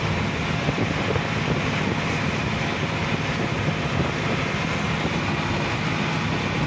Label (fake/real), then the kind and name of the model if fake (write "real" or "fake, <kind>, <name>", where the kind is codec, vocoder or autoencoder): real